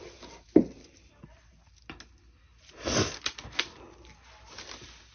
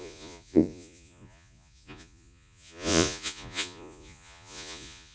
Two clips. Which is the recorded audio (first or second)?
first